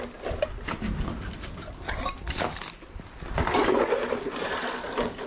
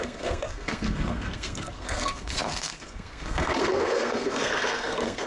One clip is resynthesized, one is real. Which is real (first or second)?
first